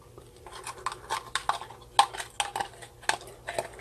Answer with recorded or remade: recorded